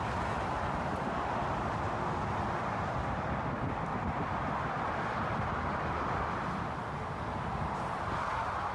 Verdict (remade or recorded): recorded